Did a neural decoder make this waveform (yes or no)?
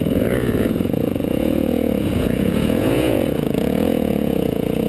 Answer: yes